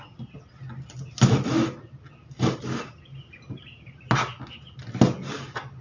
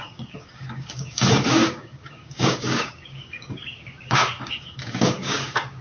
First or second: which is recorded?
first